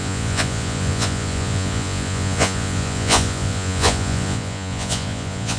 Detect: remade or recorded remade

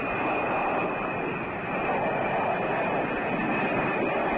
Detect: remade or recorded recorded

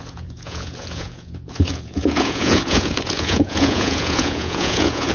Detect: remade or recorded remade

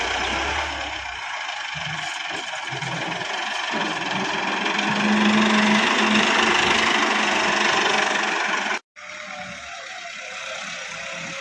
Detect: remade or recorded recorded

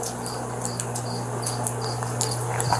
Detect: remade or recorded recorded